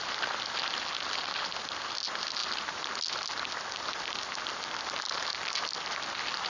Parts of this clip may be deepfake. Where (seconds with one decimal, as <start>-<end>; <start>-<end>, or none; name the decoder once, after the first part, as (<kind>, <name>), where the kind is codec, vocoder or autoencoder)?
none